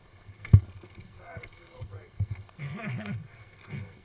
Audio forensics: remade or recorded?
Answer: remade